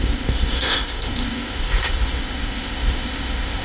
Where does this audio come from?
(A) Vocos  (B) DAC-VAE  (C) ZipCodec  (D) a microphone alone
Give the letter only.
C